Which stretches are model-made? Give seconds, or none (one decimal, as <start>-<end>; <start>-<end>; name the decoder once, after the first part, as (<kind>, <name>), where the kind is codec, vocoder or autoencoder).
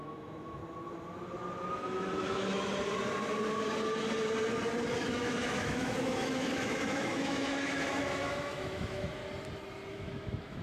0.0-0.6 (autoencoder, DAC-VAE); 1.7-2.7; 5.0-9.2; 9.9-10.6